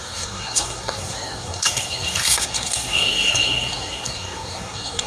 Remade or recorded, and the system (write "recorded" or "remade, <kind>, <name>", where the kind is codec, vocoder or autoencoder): remade, codec, SNAC